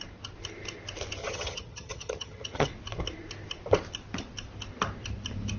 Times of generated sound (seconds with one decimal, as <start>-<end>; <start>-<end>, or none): 1.2-2.7